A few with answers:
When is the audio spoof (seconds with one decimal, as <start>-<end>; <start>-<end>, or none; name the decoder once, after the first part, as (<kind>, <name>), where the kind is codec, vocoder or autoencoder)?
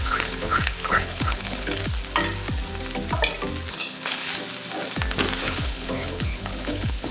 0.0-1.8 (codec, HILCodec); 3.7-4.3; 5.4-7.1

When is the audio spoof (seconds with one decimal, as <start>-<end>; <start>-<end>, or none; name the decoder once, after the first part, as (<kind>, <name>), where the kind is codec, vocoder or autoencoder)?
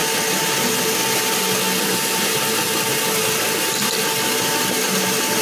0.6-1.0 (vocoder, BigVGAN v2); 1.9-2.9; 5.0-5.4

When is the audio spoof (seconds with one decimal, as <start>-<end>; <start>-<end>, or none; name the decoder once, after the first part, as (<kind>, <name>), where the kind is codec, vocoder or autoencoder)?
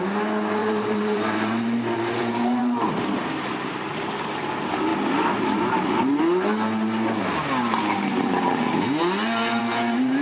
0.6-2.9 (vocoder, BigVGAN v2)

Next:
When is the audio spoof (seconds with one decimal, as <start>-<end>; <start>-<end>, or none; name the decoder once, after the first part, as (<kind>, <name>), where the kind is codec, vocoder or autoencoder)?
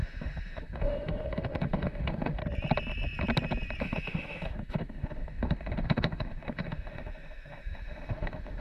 0.0-2.4 (autoencoder, DAC-VAE); 3.8-8.6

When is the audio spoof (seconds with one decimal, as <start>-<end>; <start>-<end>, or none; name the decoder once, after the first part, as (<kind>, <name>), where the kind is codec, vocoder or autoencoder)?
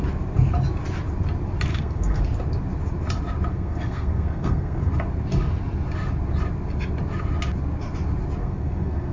1.7-2.2 (codec, SNAC); 3.5-4.9; 8.4-9.1